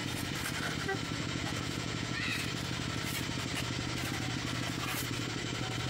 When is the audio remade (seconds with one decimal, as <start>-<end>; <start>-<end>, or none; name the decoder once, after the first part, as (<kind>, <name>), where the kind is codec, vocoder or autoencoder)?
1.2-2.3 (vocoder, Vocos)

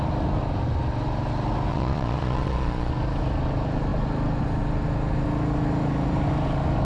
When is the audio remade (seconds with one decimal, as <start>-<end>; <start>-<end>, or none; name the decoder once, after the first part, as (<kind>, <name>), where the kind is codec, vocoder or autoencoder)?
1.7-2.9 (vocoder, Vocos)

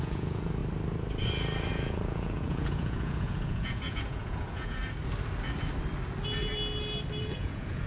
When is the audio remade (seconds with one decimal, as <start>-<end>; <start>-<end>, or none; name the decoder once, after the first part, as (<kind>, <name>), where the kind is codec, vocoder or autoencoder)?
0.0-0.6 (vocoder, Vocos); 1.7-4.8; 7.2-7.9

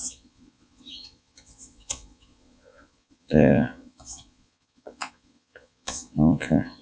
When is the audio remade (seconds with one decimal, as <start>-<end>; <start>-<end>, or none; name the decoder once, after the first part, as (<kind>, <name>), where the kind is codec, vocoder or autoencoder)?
0.0-6.8 (vocoder, Vocos)

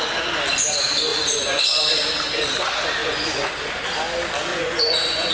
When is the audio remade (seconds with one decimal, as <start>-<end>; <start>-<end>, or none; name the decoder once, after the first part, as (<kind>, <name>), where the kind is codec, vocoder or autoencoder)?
1.1-1.6 (vocoder, Vocos); 3.0-3.5; 4.5-5.3